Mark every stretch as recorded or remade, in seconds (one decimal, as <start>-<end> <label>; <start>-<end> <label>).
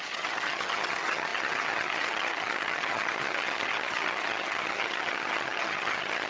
0.0-6.3 remade